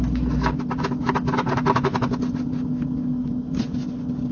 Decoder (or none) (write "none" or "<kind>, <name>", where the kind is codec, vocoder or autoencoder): none